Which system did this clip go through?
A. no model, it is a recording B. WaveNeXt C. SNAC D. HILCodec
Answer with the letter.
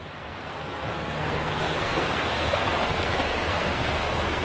C